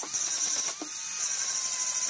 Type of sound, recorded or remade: recorded